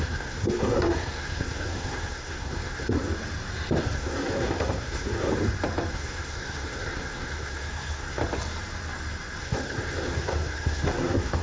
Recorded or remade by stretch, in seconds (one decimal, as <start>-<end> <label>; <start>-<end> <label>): 0.0-3.1 remade; 3.1-3.8 recorded; 3.8-5.3 remade; 5.3-5.9 recorded; 5.9-8.2 remade; 8.2-9.4 recorded; 9.4-11.4 remade